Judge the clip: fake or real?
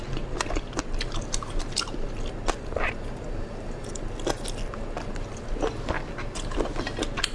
real